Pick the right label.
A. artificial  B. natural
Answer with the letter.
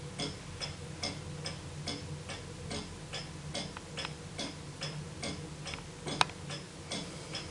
B